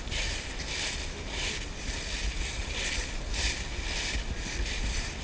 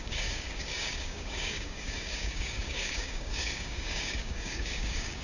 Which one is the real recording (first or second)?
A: first